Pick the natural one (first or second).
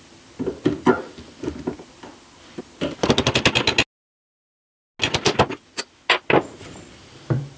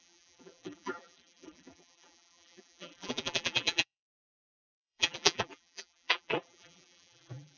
first